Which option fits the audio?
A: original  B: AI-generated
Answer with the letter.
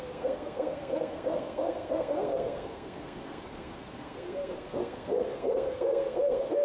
B